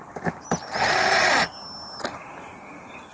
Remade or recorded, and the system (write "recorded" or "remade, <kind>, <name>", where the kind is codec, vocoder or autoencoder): recorded